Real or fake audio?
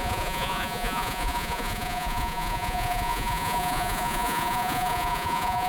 fake